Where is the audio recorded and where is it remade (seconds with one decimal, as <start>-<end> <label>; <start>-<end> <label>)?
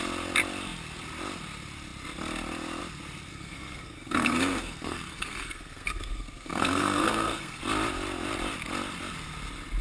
0.0-3.3 recorded; 3.3-7.6 remade; 7.6-9.8 recorded